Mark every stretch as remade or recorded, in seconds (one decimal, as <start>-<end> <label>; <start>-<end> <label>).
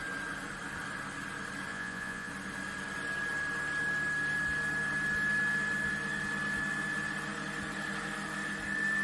0.0-1.7 recorded; 1.7-2.3 remade; 2.3-9.0 recorded